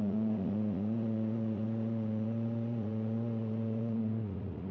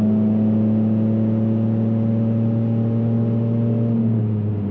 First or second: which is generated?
first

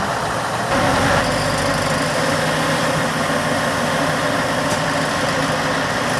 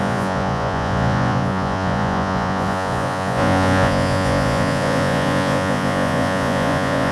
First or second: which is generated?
second